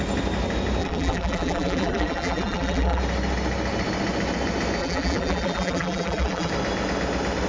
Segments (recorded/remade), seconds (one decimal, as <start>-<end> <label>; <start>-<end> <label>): 0.0-0.8 recorded; 0.8-3.0 remade; 3.0-4.8 recorded; 4.8-6.5 remade; 6.5-7.5 recorded

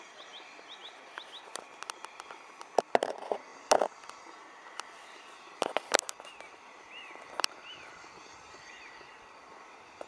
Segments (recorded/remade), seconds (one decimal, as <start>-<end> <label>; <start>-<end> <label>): 0.0-10.1 remade

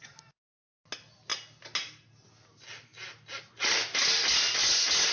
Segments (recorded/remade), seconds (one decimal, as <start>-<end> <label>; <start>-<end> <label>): 0.0-5.1 recorded

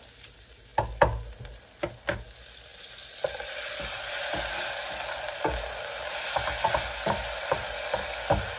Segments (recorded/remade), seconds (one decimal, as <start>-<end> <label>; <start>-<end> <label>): 0.0-8.6 recorded

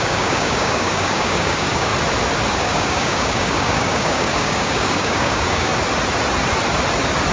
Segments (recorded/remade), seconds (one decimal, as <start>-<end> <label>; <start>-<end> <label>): 0.0-1.9 remade; 1.9-2.6 recorded; 2.6-5.7 remade; 5.7-7.3 recorded

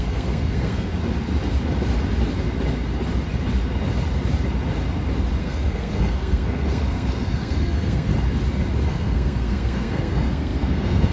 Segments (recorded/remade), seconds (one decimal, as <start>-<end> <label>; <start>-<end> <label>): 0.0-0.9 remade; 0.9-5.4 recorded; 5.4-8.1 remade; 8.1-8.9 recorded; 8.9-11.1 remade